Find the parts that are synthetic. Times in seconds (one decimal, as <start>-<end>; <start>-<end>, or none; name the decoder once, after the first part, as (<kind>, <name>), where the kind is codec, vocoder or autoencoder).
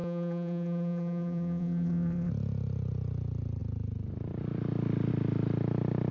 0.0-2.3 (vocoder, BigVGAN v2)